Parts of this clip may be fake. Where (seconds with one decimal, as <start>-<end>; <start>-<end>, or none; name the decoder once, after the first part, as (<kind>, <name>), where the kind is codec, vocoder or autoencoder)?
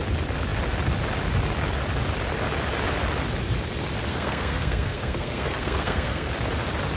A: 4.1-6.3 (codec, SNAC)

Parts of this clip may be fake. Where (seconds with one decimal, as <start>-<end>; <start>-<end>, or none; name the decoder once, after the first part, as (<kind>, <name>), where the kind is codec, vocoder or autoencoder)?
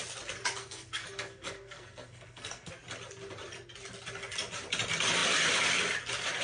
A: 0.6-2.7 (codec, SNAC)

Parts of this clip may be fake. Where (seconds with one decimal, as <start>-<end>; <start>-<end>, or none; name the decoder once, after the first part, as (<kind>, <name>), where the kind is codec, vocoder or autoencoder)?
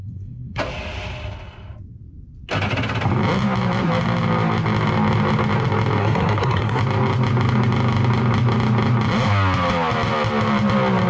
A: 0.0-0.6 (codec, SNAC); 6.0-6.8